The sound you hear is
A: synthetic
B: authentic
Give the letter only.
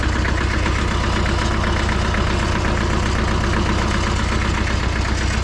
B